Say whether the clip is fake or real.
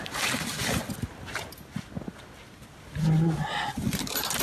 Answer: real